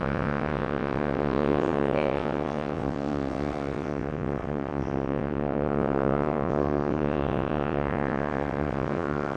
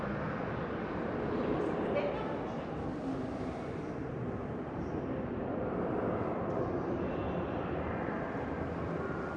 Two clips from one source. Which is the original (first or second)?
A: second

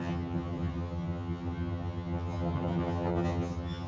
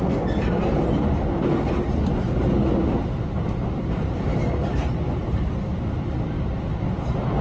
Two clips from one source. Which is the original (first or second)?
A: second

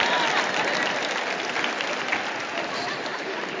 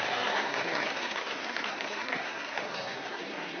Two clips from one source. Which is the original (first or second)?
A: first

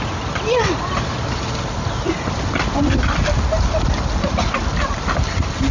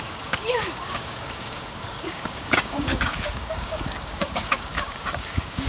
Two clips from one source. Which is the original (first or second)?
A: first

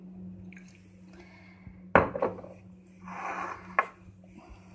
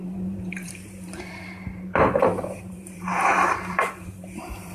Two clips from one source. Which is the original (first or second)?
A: first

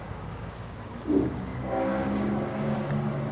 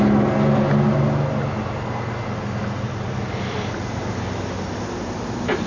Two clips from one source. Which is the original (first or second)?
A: second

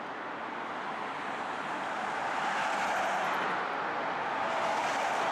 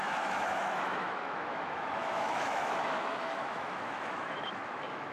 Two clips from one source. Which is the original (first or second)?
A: first